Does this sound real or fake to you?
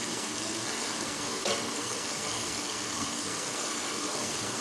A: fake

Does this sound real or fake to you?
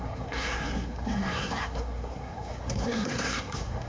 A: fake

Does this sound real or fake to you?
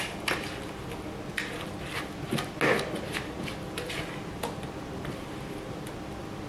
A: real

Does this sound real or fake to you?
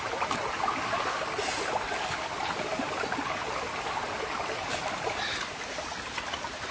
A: real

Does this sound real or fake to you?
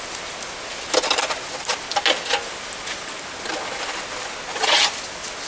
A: real